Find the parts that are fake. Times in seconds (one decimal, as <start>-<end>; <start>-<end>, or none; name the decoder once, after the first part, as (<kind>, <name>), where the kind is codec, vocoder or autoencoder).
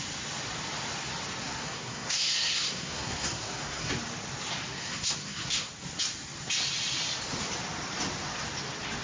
1.4-3.9 (codec, SNAC); 4.7-5.7